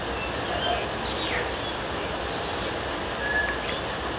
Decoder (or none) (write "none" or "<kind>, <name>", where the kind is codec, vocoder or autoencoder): none